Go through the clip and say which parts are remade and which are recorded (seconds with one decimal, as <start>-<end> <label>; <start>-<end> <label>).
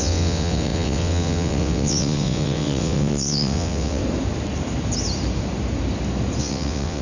0.0-4.0 remade; 4.0-6.4 recorded; 6.4-7.0 remade